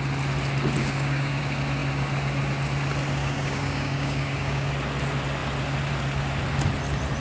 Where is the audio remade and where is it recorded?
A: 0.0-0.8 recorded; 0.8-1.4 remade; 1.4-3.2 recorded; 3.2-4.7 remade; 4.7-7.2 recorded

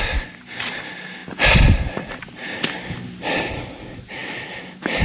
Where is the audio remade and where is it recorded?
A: 0.0-5.0 recorded

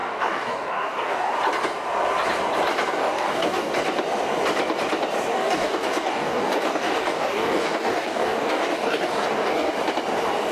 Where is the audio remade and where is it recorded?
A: 0.0-1.4 remade; 1.4-3.0 recorded; 3.0-3.7 remade; 3.7-5.3 recorded; 5.3-9.7 remade; 9.7-10.5 recorded

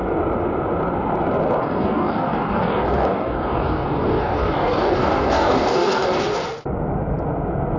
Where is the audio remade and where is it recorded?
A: 0.0-1.6 recorded; 1.6-6.3 remade; 6.3-7.8 recorded

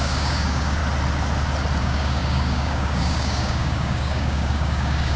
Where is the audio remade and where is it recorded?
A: 0.0-0.8 remade; 0.8-1.8 recorded; 1.8-5.2 remade

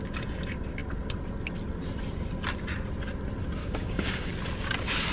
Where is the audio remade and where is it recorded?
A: 0.0-3.6 recorded; 3.6-4.3 remade; 4.3-5.1 recorded

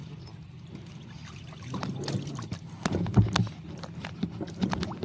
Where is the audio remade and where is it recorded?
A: 0.0-5.0 recorded

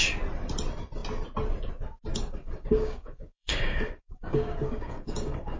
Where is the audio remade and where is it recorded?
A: 0.0-2.1 recorded; 2.1-5.6 remade